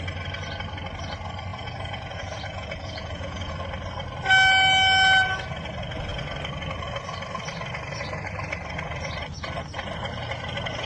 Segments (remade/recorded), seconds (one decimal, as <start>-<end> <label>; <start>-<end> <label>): 0.0-1.5 recorded; 1.5-3.5 remade; 3.5-10.9 recorded